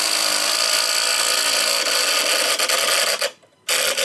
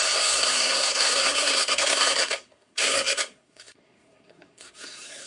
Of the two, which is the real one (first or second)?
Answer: first